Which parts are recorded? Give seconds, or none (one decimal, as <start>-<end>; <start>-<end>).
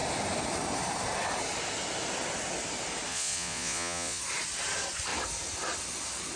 0.0-3.1; 4.2-6.4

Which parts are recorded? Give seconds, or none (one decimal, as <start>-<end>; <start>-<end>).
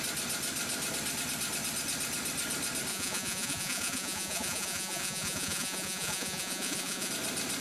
0.0-2.9; 7.1-7.6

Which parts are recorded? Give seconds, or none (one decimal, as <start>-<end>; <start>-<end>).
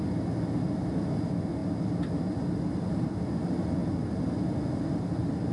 0.0-5.5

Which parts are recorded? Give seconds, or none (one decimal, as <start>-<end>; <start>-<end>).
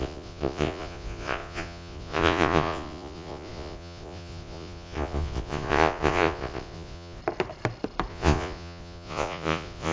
7.2-8.1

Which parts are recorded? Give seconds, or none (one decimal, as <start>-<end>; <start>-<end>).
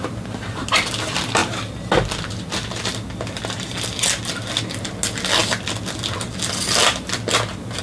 0.0-7.8